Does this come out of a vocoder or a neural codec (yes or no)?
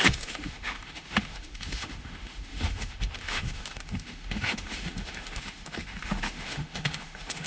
yes